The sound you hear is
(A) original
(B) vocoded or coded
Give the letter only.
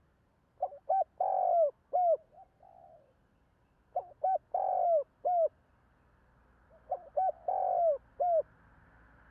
A